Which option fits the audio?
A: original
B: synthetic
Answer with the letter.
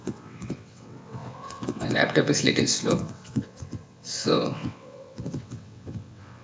B